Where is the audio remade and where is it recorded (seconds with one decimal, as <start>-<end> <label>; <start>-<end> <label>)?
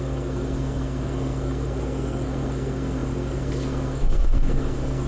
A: 0.0-5.1 remade